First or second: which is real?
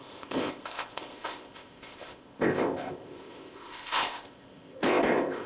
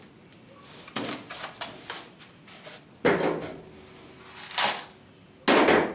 second